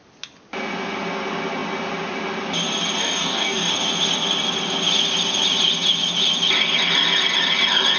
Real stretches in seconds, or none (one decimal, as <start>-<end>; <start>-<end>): 0.0-3.0; 3.7-8.0